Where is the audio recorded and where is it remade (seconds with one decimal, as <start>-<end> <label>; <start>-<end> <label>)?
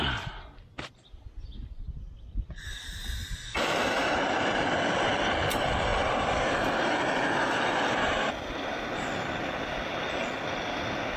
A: 0.0-11.2 recorded